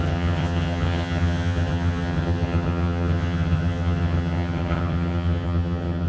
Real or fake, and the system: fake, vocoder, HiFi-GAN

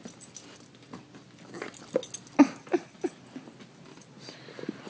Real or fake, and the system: real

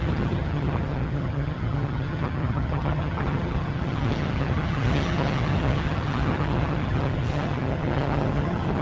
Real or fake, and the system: fake, vocoder, HiFi-GAN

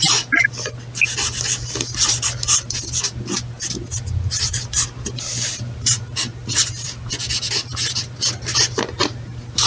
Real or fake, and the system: real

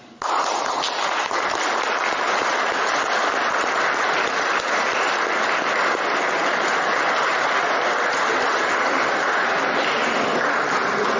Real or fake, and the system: real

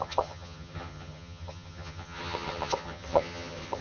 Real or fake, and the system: fake, vocoder, HiFi-GAN